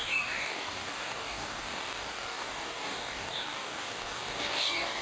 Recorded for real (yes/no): no